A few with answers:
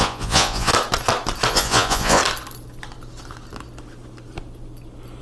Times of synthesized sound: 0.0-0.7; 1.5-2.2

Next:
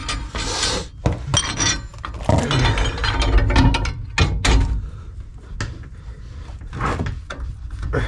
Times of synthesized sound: none

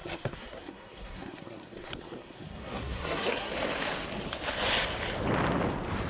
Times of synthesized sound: 0.0-3.5

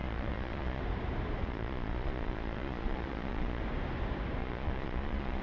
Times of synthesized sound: 0.0-0.8; 1.4-3.6; 4.4-5.4

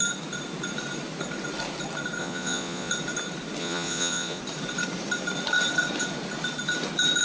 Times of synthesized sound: 2.2-2.9; 3.6-4.4

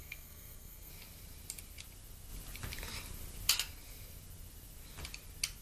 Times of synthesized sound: 0.0-0.9

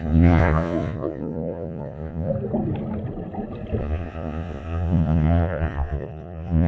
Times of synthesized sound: 0.0-2.3; 3.8-6.7